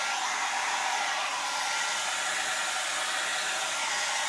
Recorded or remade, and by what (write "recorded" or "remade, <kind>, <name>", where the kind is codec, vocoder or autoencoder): recorded